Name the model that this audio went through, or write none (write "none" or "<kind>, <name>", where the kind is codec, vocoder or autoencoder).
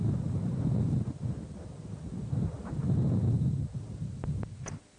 none